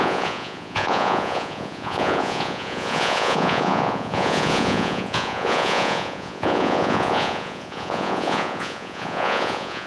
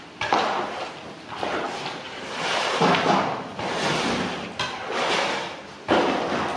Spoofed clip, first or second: first